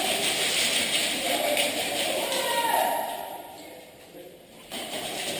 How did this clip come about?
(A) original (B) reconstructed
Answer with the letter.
B